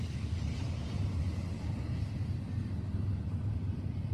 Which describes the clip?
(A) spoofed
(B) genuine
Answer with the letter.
B